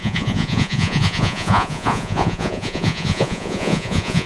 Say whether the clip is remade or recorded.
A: remade